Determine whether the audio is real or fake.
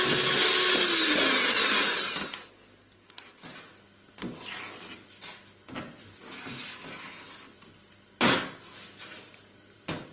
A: real